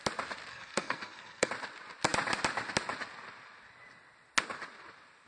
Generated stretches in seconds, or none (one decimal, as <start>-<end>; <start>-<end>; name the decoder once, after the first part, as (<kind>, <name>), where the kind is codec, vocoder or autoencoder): 0.5-1.5 (codec, SNAC)